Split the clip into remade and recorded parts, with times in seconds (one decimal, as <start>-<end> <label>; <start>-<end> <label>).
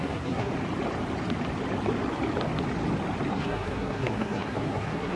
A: 0.0-0.5 remade; 0.5-3.3 recorded; 3.3-5.2 remade